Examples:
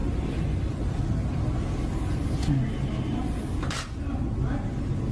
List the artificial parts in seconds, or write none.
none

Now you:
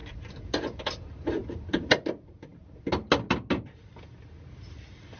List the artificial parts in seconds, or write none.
none